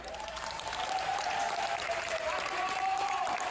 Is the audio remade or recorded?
remade